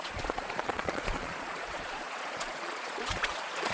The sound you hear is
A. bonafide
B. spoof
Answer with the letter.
B